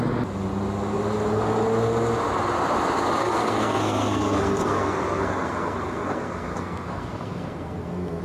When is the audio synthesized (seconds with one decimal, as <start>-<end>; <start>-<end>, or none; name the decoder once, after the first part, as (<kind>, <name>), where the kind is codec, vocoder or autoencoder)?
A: 3.2-8.2 (codec, SNAC)